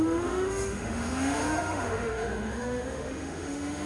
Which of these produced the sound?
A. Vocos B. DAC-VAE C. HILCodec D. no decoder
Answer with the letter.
B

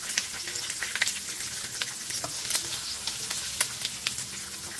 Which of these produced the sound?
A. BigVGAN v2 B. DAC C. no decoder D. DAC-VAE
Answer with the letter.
C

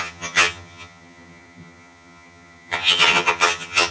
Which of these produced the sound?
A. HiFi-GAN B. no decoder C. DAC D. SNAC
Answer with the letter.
A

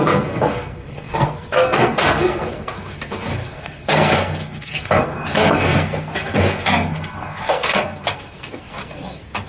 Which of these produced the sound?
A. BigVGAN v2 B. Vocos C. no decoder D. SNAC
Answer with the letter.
D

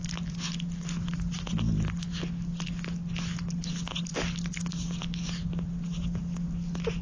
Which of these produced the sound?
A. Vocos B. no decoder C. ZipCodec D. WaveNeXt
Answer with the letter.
B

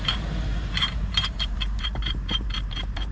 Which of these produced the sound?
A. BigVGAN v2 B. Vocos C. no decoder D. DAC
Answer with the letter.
A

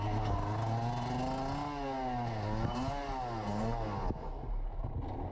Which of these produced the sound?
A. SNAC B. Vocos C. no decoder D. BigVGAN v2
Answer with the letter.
C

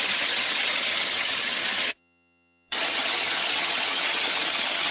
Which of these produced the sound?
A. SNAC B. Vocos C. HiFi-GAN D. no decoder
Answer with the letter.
C